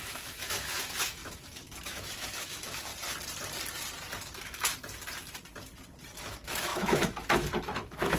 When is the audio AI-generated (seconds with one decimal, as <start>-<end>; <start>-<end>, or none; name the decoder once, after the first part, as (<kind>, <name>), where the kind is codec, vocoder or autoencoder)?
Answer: 0.0-2.9 (autoencoder, DAC-VAE); 4.2-4.7; 6.2-8.2